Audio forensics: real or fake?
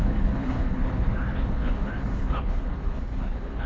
fake